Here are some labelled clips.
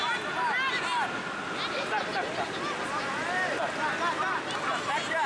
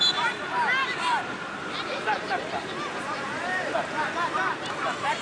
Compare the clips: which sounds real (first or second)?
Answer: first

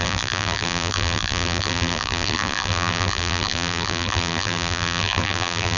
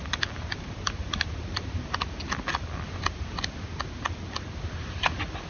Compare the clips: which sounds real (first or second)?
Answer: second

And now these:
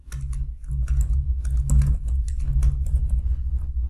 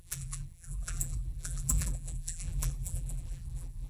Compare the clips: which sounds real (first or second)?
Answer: first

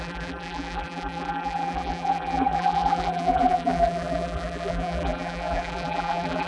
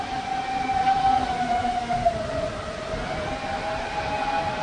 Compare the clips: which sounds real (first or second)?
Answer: second